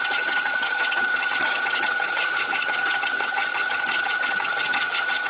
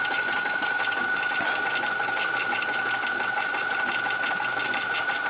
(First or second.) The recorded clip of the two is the second